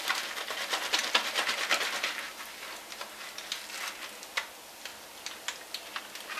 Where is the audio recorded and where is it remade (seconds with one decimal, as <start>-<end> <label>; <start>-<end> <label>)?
0.0-6.4 recorded